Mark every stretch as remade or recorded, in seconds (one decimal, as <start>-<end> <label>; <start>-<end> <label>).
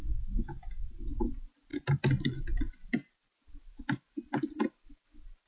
0.0-5.5 recorded